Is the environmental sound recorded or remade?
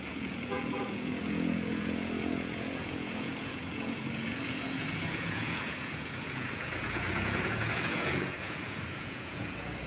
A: remade